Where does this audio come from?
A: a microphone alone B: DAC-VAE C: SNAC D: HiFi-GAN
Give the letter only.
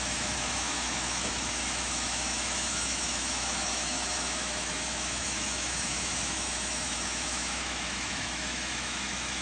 B